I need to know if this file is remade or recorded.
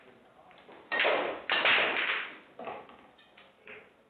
recorded